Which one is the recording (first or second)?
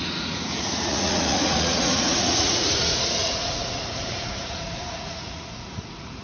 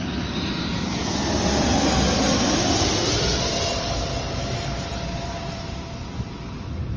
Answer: second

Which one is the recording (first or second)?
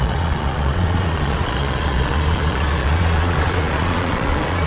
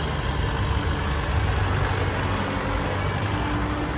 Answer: second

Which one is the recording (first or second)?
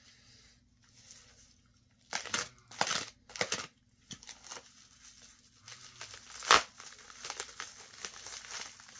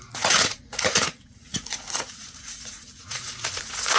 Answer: first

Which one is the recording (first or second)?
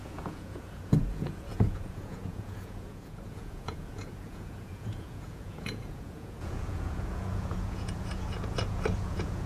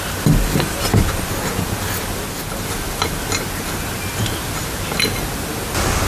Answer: second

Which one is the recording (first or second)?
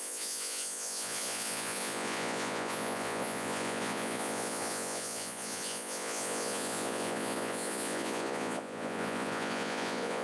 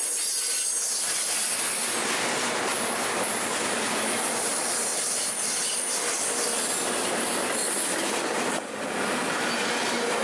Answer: second